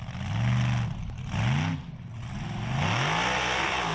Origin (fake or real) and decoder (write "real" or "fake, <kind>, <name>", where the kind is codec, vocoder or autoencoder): real